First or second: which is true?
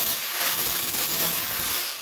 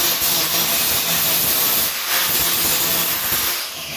second